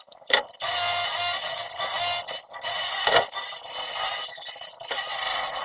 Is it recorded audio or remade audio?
recorded